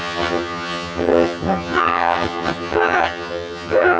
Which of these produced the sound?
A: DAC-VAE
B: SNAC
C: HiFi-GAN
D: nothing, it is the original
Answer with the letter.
C